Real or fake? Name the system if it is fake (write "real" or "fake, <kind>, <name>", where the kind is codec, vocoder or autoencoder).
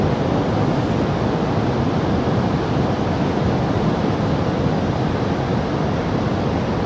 real